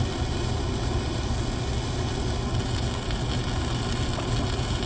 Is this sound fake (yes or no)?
no